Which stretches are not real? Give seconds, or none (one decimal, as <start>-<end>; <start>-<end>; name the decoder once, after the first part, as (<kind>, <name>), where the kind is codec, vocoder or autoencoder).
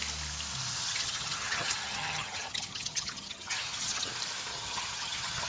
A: 0.8-4.1 (vocoder, HiFi-GAN); 4.5-5.5